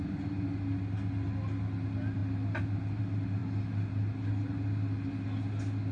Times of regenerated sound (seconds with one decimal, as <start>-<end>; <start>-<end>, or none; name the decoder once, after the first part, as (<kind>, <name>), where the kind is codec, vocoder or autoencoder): none